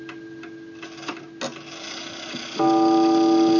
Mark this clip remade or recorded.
recorded